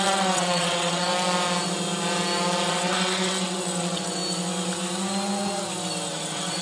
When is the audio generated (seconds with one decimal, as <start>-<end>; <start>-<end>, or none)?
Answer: 0.0-1.1; 2.7-4.2; 6.1-6.6